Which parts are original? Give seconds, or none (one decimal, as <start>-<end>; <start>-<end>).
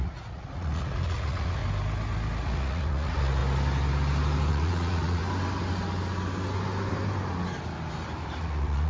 1.6-2.4; 3.4-4.5; 5.2-8.4